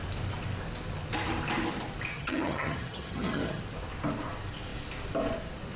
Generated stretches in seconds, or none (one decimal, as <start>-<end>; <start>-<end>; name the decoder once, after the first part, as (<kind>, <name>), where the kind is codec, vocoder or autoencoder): 2.1-3.6 (vocoder, HiFi-GAN)